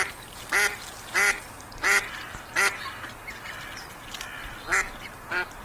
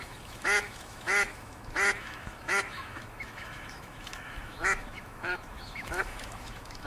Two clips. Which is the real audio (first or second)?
first